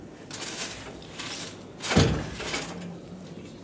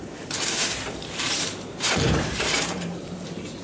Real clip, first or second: first